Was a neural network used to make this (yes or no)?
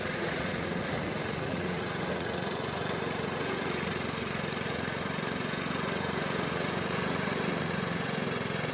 yes